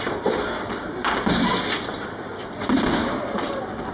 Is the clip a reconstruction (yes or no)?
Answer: yes